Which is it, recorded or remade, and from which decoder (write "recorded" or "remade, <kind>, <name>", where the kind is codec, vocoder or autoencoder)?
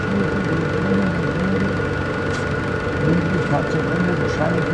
recorded